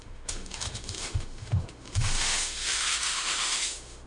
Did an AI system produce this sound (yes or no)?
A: yes